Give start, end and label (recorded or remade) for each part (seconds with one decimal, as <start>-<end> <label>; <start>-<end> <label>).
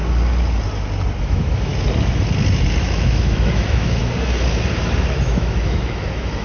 0.0-1.2 recorded; 1.2-1.7 remade; 1.7-2.8 recorded; 2.8-4.0 remade; 4.0-5.1 recorded; 5.1-6.4 remade